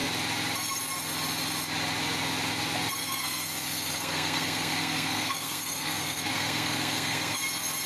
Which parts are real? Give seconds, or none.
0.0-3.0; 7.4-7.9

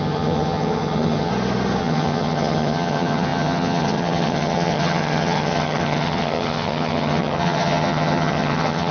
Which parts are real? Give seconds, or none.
1.3-1.8

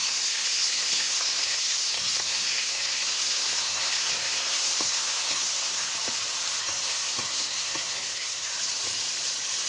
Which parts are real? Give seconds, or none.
5.9-6.6; 8.5-9.7

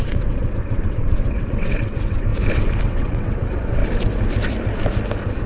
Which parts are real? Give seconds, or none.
2.3-2.8; 3.8-5.5